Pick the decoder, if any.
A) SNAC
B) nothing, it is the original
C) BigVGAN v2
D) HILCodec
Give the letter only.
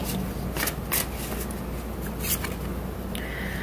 B